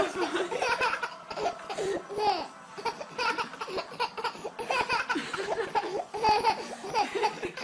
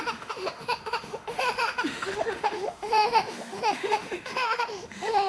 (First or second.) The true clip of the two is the first